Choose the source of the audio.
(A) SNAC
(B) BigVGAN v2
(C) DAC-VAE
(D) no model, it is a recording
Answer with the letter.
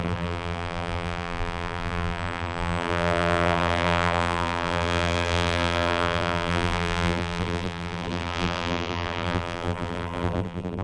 B